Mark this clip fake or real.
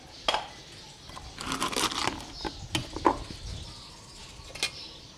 real